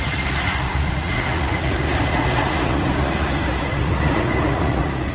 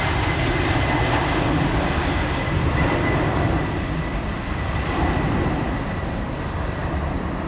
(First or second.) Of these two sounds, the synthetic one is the first